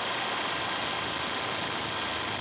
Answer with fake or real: real